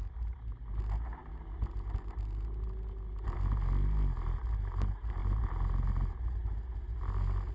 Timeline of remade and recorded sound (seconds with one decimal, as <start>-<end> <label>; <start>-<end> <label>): 0.0-7.5 recorded